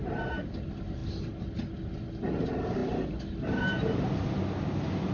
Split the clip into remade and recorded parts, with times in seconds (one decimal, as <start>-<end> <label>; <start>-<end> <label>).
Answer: 0.0-5.1 recorded